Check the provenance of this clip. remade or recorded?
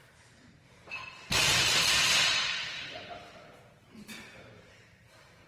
remade